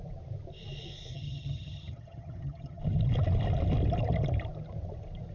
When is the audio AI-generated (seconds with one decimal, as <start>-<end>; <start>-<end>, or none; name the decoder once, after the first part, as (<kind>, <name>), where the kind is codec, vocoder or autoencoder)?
1.1-2.8 (vocoder, HiFi-GAN)